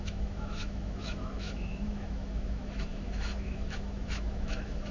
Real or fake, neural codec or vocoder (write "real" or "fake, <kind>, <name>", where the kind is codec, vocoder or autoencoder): fake, autoencoder, DAC-VAE